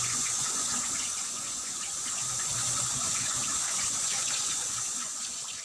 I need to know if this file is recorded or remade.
remade